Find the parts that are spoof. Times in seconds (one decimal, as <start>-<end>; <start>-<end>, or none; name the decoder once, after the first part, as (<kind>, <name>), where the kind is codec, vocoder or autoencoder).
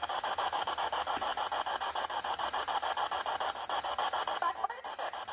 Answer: 0.0-0.7 (autoencoder, DAC-VAE)